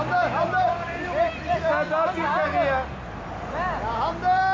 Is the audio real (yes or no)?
yes